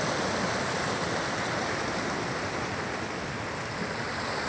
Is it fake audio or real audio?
real